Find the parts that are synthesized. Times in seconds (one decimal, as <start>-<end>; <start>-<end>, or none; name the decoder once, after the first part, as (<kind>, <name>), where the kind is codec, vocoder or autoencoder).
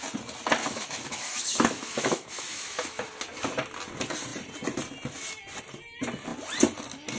0.6-3.1 (autoencoder, DAC-VAE)